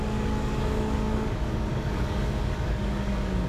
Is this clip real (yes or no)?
no